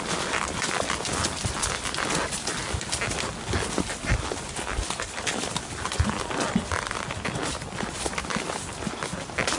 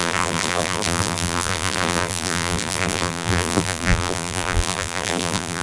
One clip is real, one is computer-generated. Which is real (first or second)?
first